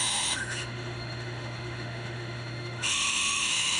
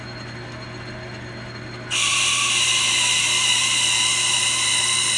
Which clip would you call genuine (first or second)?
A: second